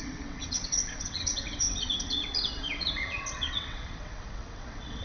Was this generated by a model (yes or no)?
yes